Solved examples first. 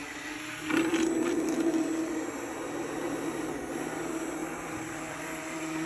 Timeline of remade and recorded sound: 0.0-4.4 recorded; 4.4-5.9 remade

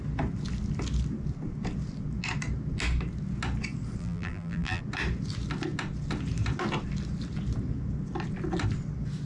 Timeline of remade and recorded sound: 0.0-4.0 recorded; 4.0-4.8 remade; 4.8-9.3 recorded

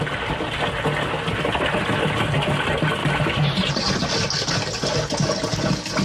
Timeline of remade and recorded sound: 0.0-3.0 recorded; 3.0-3.9 remade; 3.9-6.0 recorded

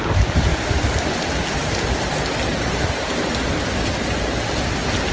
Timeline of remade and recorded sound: 0.0-5.1 recorded

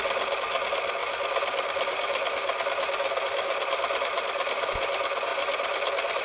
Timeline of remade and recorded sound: 0.0-6.2 recorded

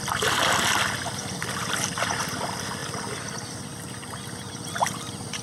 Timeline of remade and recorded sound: 0.0-2.8 recorded; 2.8-4.5 remade; 4.5-5.4 recorded

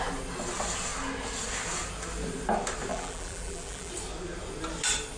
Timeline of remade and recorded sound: 0.0-2.9 recorded; 2.9-3.9 remade; 3.9-5.2 recorded